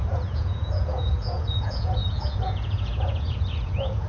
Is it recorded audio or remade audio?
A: remade